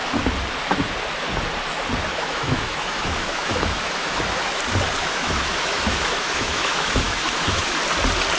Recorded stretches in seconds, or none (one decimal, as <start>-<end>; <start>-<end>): 0.0-2.1; 4.6-5.0; 7.7-8.4